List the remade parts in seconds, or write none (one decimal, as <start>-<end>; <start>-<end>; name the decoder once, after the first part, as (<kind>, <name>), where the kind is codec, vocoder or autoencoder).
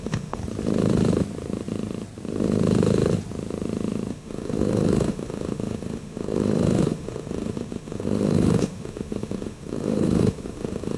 0.0-0.4 (autoencoder, DAC-VAE); 4.1-11.0